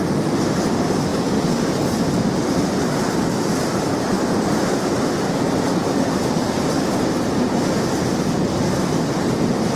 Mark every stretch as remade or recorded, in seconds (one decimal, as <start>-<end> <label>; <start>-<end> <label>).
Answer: 0.0-9.8 recorded